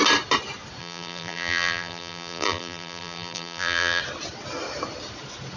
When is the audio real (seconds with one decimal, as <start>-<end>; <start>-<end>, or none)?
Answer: 0.0-0.8; 4.0-5.6